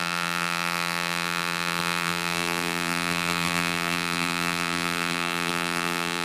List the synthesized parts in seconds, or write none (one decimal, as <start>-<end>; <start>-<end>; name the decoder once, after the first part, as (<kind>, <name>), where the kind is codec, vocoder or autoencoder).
0.0-6.2 (vocoder, BigVGAN v2)